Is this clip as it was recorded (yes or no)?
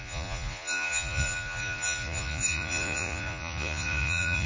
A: no